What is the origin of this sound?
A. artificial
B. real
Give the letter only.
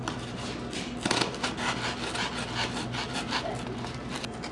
B